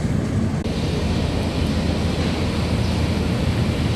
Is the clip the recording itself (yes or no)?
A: yes